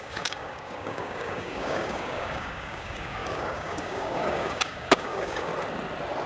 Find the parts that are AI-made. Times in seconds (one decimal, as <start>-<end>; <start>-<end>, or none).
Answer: 0.0-5.5